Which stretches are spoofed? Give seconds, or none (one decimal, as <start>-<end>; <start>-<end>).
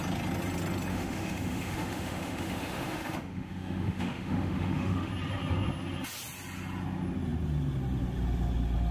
0.9-5.1